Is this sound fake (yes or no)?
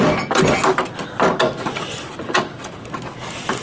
no